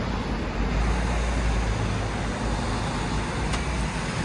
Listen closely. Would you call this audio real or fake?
real